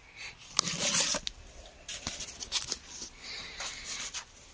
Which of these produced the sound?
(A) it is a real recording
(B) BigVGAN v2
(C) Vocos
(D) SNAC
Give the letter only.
A